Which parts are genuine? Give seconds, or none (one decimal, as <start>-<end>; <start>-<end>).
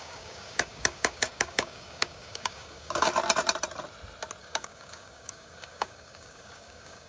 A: 3.1-4.4